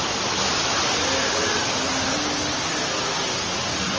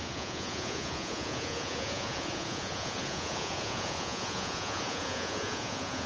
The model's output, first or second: second